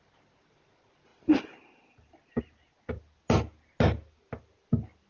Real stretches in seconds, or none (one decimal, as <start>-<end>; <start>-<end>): 0.0-5.1